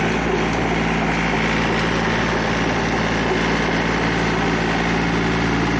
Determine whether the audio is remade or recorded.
recorded